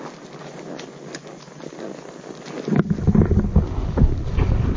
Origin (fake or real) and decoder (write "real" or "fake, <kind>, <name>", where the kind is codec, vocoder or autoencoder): real